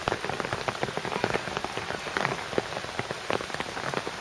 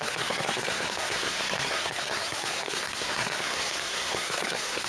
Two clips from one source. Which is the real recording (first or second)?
first